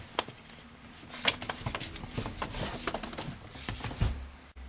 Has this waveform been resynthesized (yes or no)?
no